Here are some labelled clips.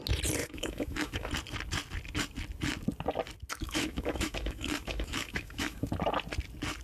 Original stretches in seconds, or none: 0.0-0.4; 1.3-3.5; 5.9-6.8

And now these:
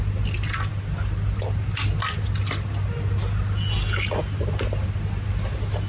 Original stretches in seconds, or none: 0.0-5.9